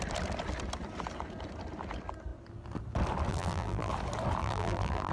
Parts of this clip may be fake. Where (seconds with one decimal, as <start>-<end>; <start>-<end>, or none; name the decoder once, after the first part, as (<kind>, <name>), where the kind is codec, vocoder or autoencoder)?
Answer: 3.3-3.9 (vocoder, BigVGAN v2); 4.4-5.1